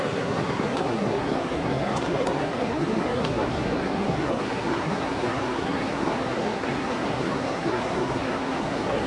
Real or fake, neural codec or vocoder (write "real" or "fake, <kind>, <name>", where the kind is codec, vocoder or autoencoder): fake, codec, SNAC